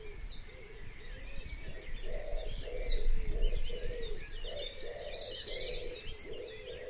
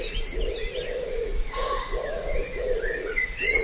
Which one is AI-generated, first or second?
second